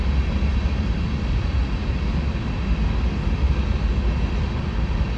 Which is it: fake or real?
real